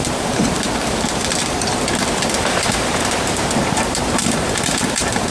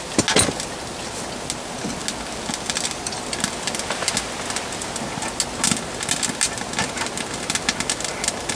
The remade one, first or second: first